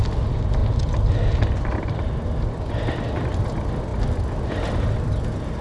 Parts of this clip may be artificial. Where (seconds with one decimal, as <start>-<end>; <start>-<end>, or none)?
none